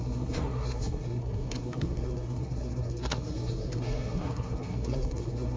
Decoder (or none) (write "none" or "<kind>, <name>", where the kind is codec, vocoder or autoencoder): codec, SNAC